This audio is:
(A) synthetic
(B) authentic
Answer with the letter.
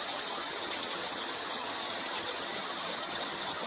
A